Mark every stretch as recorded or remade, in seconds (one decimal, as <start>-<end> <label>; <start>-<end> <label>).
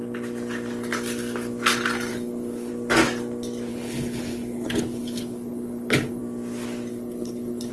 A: 0.0-2.1 recorded; 2.1-2.7 remade; 2.7-3.7 recorded; 3.7-6.2 remade; 6.2-6.9 recorded; 6.9-7.7 remade